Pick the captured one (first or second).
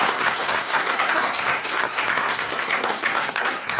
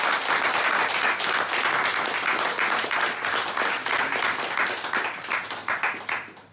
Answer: second